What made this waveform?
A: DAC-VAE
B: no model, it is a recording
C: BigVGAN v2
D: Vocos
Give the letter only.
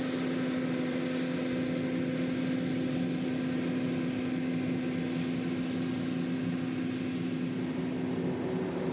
B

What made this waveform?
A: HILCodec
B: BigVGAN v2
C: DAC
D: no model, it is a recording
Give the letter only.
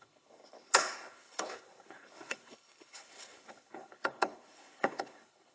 A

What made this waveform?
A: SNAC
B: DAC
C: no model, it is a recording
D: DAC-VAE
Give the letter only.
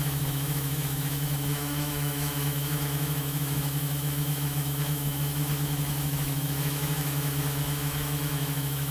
D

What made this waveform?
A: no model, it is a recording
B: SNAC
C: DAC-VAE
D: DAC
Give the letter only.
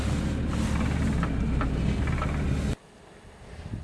A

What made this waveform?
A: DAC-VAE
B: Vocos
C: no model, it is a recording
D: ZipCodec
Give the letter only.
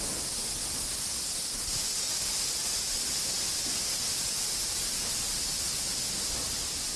C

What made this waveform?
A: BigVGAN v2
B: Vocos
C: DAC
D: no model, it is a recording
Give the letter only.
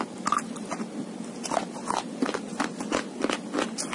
D